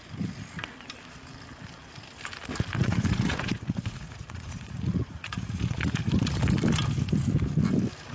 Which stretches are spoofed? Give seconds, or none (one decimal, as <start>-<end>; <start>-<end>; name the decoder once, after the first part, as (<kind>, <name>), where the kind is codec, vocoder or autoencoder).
2.8-6.1 (vocoder, Vocos)

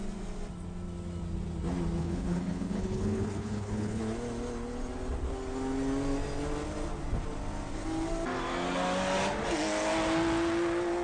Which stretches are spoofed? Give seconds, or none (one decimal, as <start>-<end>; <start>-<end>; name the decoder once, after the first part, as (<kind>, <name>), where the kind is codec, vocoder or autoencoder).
2.0-4.0 (codec, HILCodec)

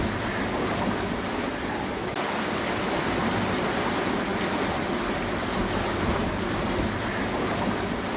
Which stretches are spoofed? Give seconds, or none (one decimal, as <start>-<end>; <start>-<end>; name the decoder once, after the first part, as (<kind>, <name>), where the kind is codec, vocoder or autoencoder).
none

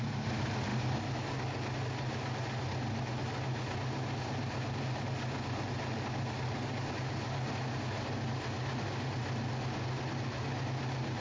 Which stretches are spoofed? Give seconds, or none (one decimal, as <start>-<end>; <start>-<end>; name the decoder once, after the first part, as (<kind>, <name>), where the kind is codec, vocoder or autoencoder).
none

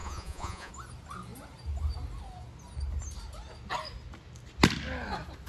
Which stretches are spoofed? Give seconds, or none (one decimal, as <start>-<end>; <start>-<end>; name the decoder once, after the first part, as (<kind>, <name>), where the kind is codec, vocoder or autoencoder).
0.0-0.7 (vocoder, Vocos)

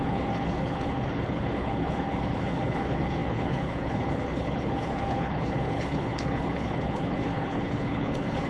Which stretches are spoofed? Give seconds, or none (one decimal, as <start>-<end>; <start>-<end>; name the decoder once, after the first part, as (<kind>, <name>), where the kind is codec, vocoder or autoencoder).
0.0-8.5 (codec, HILCodec)

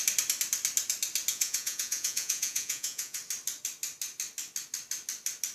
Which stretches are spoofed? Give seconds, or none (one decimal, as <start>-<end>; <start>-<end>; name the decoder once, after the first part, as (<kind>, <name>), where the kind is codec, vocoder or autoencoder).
1.3-3.2 (vocoder, Vocos)